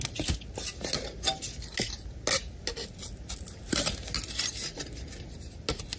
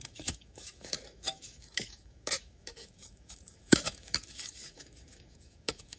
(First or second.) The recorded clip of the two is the first